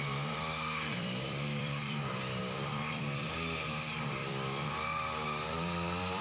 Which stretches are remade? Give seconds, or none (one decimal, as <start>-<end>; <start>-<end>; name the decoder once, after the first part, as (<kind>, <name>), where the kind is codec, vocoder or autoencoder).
0.0-6.2 (vocoder, BigVGAN v2)